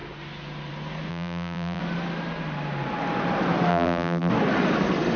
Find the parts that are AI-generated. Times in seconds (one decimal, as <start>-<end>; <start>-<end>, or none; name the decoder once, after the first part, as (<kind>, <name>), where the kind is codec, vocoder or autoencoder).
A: 1.1-1.8 (vocoder, BigVGAN v2); 3.7-4.3